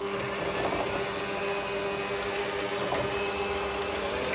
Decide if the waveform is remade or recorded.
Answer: recorded